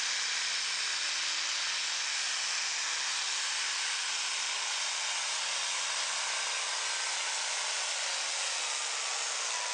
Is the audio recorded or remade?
recorded